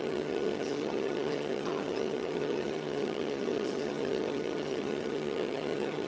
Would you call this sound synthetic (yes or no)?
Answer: yes